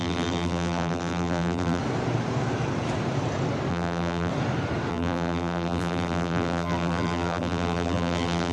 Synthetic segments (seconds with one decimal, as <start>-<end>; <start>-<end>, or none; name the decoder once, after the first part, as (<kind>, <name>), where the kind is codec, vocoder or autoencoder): 0.0-1.8 (vocoder, BigVGAN v2); 3.7-4.3; 4.9-8.5